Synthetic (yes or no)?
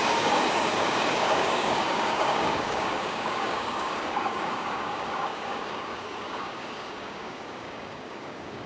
yes